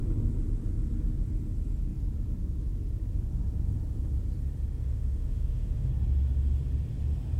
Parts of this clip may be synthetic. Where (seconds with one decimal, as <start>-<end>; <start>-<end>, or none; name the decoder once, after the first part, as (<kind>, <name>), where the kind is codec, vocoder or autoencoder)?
4.8-5.9 (autoencoder, DAC-VAE)